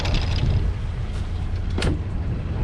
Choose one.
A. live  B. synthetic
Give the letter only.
A